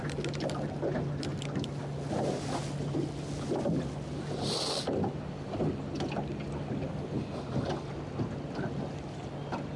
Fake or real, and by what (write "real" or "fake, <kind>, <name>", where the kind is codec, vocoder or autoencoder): real